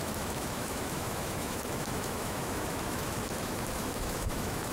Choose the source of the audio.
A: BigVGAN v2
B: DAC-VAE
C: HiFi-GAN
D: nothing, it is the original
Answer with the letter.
B